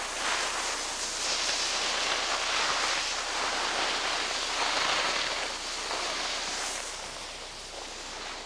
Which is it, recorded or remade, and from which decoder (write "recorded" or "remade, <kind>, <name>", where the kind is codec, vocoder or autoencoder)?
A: recorded